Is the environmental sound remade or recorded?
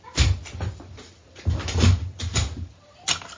recorded